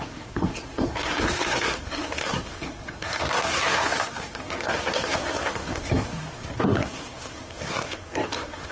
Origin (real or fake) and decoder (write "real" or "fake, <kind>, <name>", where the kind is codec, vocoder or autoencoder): fake, codec, SNAC